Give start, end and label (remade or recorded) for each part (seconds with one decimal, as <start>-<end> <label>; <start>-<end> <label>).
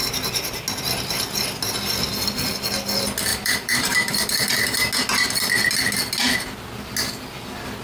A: 0.0-3.3 recorded; 3.3-4.5 remade; 4.5-7.8 recorded